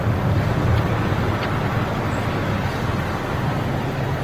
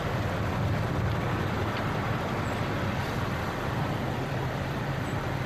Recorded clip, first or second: first